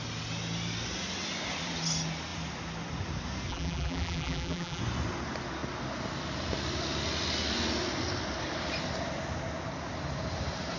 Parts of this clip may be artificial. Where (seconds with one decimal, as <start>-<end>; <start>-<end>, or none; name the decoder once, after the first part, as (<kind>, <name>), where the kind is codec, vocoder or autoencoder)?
3.5-4.8 (vocoder, BigVGAN v2)